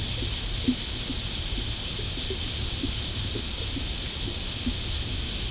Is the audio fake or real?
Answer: real